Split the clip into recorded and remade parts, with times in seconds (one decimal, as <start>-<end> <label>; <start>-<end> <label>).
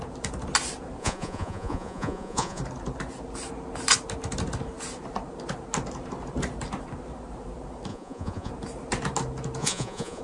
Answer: 0.0-1.0 recorded; 1.0-2.6 remade; 2.6-7.9 recorded; 7.9-8.5 remade; 8.5-9.6 recorded; 9.6-10.2 remade